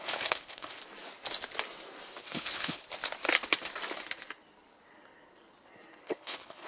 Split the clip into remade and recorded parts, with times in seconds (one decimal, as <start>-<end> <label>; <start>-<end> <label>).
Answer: 0.0-0.8 remade; 0.8-2.2 recorded; 2.2-2.8 remade; 2.8-6.0 recorded; 6.0-6.7 remade